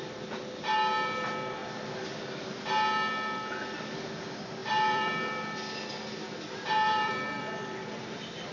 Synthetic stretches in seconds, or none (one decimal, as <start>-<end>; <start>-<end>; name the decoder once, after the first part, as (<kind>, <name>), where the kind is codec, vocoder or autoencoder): 4.6-8.0 (vocoder, BigVGAN v2)